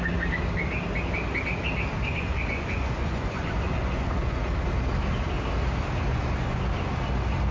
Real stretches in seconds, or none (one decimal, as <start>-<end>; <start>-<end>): 0.0-2.1; 4.4-6.1; 6.6-7.5

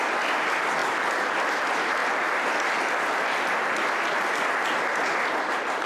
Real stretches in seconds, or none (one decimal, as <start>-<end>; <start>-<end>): 0.0-5.9

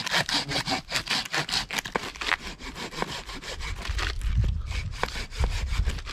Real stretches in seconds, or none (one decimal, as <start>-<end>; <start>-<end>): 0.0-6.1

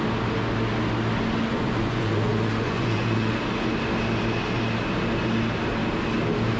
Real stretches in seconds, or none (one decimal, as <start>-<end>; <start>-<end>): 0.0-1.5; 3.3-6.6

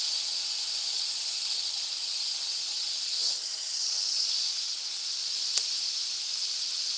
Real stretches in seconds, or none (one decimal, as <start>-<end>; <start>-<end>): 0.0-0.9; 5.1-7.0

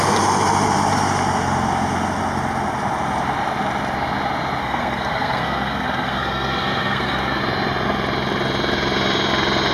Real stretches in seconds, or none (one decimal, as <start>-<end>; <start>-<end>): 0.0-4.6; 7.4-9.7

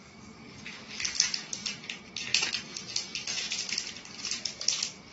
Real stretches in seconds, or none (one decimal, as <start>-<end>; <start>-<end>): 0.8-5.1